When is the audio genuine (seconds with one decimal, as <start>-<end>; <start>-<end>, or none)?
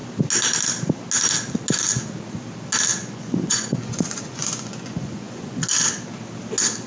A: 0.0-2.9; 5.6-6.9